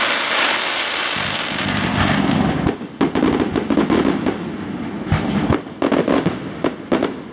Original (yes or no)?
yes